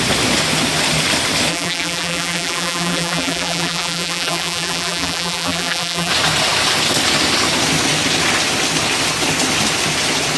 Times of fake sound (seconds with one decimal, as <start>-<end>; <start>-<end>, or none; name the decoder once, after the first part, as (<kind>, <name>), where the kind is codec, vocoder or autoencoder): 1.5-6.1 (vocoder, BigVGAN v2)